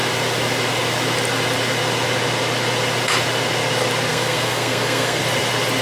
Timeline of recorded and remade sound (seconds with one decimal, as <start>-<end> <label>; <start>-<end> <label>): 0.0-4.1 recorded; 4.1-5.2 remade; 5.2-5.8 recorded